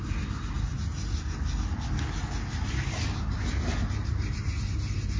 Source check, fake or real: real